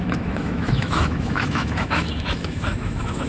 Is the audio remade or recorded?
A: remade